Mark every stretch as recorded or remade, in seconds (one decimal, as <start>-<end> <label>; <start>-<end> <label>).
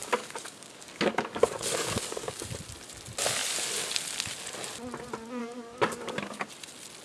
0.0-2.4 remade; 2.4-5.4 recorded; 5.4-6.5 remade; 6.5-7.0 recorded